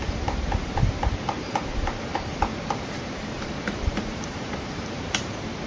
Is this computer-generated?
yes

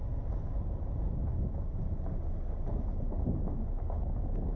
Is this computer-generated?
no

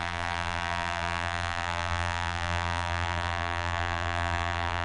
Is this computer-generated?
yes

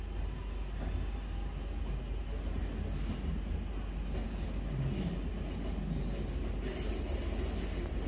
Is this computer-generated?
no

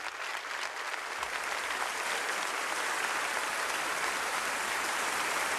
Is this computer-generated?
no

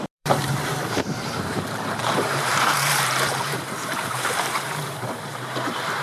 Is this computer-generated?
yes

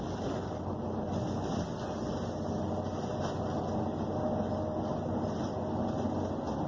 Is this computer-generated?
no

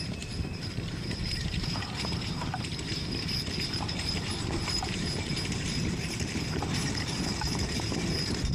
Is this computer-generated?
yes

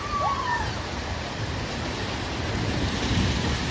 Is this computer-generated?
yes